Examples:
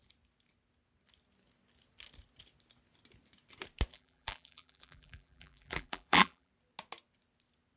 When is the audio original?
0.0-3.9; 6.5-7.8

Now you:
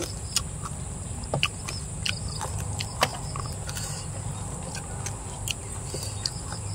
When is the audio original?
none

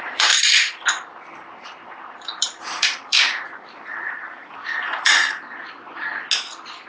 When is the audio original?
0.5-1.1; 6.1-6.9